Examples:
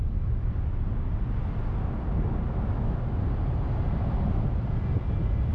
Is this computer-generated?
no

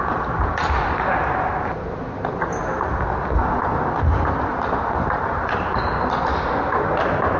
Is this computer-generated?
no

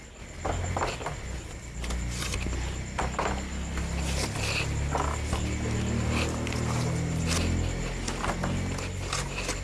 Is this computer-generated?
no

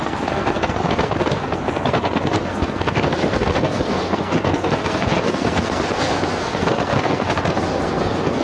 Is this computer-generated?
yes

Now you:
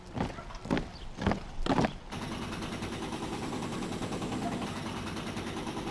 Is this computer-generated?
no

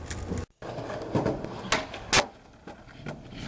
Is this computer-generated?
no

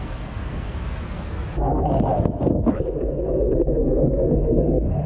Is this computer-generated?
yes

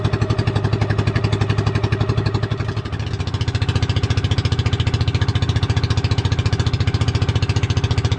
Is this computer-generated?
no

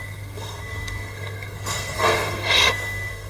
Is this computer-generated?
yes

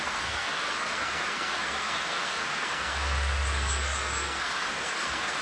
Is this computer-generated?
yes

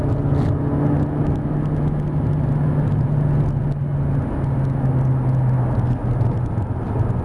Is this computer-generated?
no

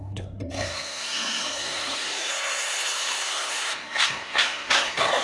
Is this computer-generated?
yes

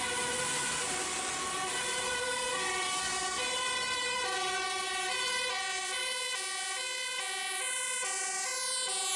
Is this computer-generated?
no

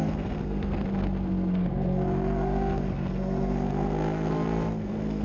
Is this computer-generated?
yes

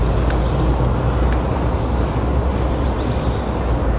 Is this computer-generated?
no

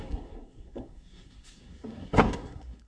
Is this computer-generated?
yes